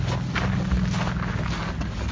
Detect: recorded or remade recorded